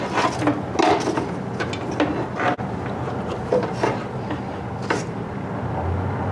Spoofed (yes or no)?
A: no